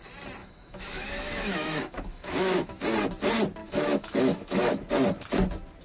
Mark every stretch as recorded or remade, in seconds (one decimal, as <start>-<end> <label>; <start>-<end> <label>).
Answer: 0.0-0.4 recorded; 0.4-2.8 remade; 2.8-3.6 recorded; 3.6-4.9 remade; 4.9-5.8 recorded